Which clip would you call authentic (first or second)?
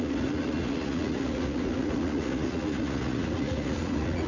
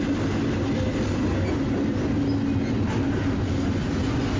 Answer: second